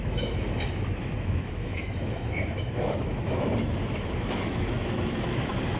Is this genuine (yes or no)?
no